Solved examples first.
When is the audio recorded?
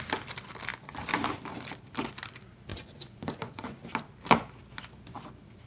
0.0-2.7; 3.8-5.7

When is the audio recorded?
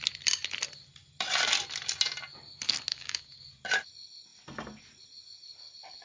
0.0-2.9; 3.4-6.0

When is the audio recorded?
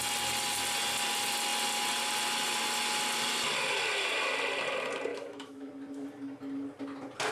0.0-5.1; 5.7-7.3